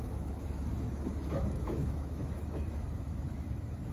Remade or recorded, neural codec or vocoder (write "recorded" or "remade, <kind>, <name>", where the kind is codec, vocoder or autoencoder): remade, autoencoder, DAC-VAE